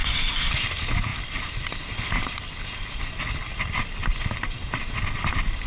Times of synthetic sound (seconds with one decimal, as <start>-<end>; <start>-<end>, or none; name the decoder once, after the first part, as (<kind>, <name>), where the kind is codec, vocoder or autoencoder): 0.0-0.5 (codec, SNAC)